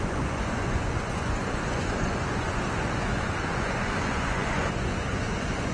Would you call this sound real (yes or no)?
no